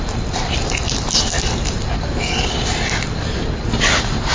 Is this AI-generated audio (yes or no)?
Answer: no